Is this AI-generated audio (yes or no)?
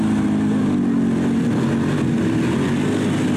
no